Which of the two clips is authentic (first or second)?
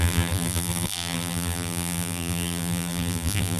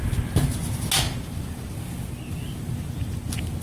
second